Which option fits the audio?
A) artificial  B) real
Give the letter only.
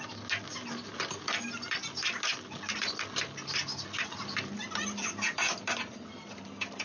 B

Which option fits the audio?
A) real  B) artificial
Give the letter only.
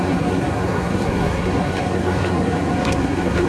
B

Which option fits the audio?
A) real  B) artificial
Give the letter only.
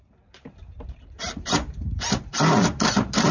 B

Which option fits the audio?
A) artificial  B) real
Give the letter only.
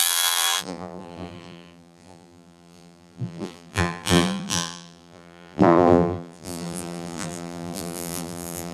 A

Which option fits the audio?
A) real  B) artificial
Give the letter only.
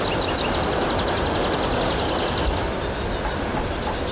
A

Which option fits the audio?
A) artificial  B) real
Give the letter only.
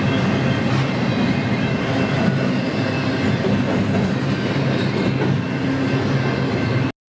B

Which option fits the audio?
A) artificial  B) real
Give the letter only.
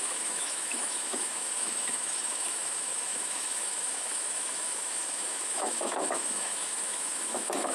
A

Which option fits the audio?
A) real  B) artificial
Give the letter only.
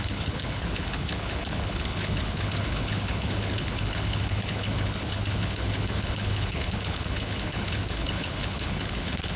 B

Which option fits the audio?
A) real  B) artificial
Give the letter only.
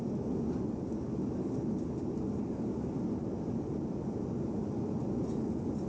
A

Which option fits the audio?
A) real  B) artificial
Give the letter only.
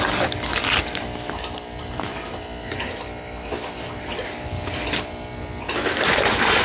A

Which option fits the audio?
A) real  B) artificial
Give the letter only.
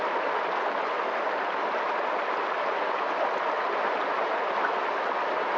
A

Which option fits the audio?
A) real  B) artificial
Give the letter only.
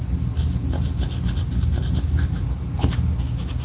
A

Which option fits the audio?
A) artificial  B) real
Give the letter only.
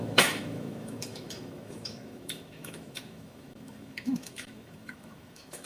A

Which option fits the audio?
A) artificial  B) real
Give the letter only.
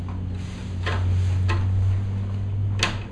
B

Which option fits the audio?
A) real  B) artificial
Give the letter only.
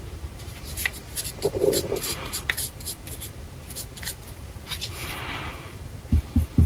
B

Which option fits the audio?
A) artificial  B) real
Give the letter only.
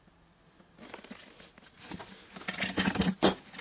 B